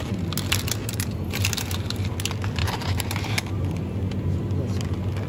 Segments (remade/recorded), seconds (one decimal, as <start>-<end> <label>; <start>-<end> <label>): 0.0-0.8 recorded; 0.8-2.1 remade; 2.1-2.6 recorded; 2.6-3.8 remade; 3.8-5.3 recorded